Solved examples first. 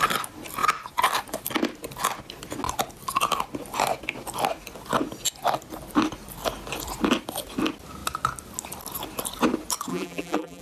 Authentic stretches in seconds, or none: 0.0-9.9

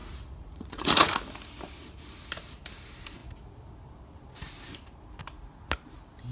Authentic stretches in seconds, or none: 1.2-6.3

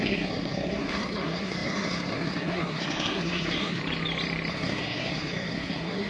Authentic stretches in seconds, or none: 3.8-4.5

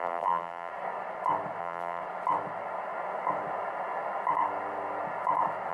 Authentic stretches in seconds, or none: 0.7-1.6; 2.0-5.7